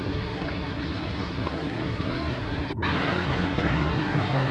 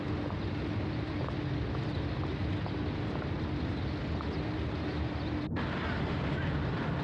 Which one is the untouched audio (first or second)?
second